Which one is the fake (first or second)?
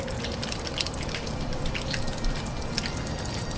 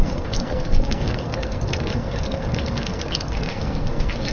second